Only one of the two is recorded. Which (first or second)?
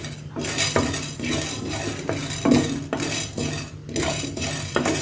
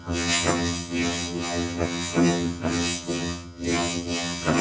first